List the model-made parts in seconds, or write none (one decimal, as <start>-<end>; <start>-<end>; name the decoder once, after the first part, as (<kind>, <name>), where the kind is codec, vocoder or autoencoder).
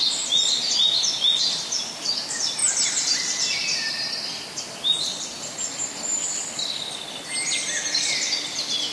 2.6-3.6 (vocoder, BigVGAN v2)